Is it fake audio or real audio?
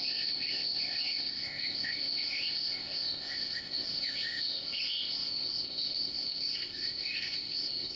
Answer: fake